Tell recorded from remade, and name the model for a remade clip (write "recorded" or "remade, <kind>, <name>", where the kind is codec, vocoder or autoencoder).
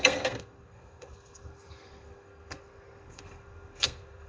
remade, codec, SNAC